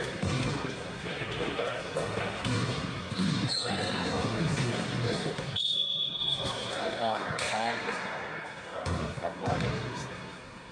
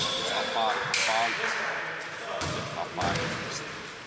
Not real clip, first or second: first